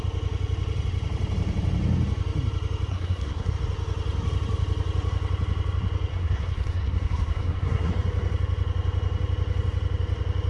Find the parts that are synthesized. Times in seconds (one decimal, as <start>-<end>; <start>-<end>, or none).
2.9-3.5; 6.1-7.9